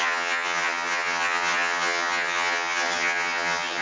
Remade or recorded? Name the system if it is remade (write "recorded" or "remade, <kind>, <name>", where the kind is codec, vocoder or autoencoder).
remade, vocoder, HiFi-GAN